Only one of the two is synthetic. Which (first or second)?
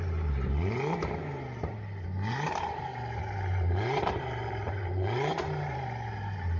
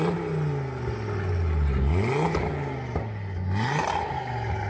first